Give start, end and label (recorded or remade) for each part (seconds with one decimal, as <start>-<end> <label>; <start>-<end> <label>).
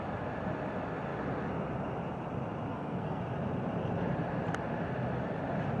0.0-2.7 recorded; 2.7-3.2 remade; 3.2-5.8 recorded